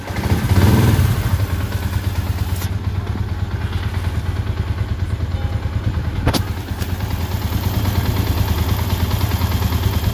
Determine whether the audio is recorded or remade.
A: recorded